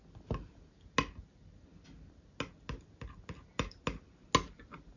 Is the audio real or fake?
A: real